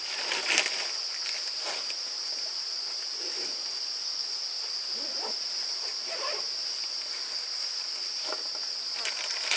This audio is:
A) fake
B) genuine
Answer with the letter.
B